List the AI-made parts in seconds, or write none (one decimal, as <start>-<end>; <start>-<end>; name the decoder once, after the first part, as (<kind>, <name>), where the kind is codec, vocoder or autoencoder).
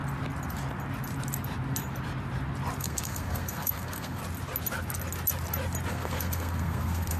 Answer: 2.8-4.2 (codec, SNAC); 5.9-7.2